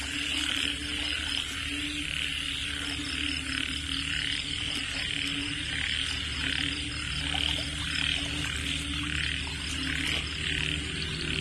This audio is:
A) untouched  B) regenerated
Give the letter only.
A